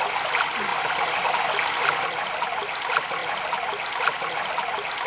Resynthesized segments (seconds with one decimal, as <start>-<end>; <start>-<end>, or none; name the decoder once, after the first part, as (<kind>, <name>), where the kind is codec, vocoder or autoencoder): none